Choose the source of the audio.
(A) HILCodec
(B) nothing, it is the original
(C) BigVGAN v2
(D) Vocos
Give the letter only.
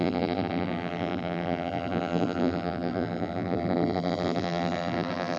C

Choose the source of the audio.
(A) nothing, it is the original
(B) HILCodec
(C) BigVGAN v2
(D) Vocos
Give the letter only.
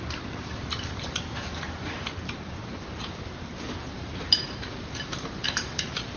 C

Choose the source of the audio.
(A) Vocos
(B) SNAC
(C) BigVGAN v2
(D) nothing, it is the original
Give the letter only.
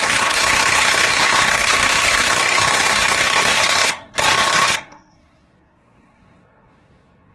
B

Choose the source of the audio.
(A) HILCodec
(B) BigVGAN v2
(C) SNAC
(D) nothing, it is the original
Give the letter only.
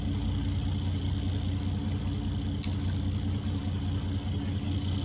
D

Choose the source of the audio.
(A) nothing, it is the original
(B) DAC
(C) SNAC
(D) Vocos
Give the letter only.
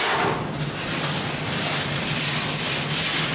A